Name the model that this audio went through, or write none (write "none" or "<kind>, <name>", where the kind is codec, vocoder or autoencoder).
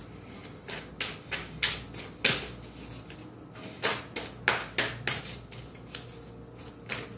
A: none